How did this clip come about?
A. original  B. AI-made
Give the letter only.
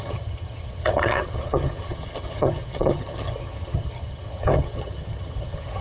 B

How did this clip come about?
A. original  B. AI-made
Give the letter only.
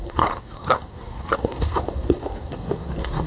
B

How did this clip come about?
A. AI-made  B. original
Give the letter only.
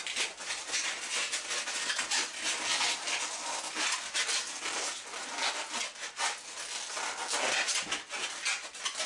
B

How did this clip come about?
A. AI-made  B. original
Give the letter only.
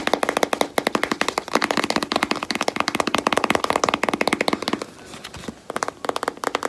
B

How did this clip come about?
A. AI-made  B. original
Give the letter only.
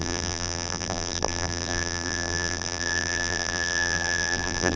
A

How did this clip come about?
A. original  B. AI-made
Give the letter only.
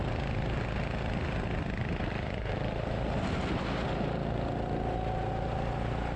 A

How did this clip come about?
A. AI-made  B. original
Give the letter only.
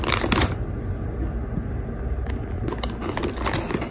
B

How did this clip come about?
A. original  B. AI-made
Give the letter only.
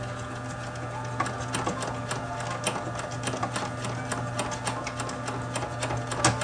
A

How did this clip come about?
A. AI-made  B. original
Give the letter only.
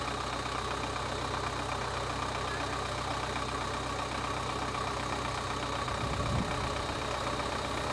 B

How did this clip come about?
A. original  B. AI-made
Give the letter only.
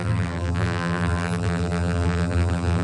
B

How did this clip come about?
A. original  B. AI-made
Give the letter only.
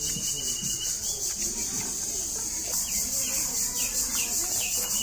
A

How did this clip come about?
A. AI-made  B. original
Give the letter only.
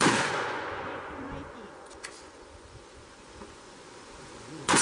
A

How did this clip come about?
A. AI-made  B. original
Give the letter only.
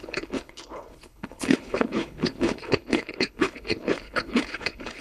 A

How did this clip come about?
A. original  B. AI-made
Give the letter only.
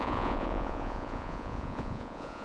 B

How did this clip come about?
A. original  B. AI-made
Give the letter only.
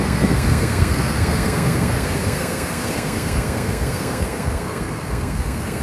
B